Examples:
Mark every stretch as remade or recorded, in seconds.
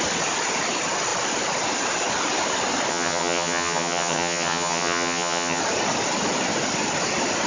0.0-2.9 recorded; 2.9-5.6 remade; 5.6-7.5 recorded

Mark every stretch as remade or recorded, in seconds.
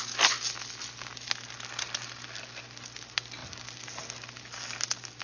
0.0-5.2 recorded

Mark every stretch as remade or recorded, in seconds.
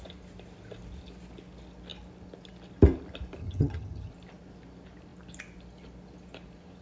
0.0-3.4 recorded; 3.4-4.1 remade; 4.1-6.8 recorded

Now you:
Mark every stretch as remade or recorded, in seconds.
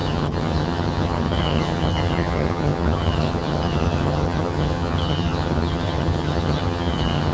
0.0-7.3 remade